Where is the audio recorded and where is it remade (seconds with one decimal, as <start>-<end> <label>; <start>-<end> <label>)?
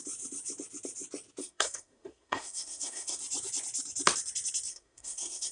0.0-1.4 recorded; 1.4-3.2 remade; 3.2-4.7 recorded; 4.7-5.5 remade